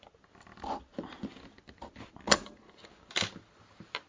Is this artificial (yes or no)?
no